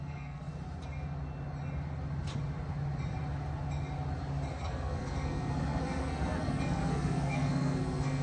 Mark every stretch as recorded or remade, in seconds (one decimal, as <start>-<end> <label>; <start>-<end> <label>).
0.0-0.5 remade; 0.5-4.6 recorded; 4.6-8.2 remade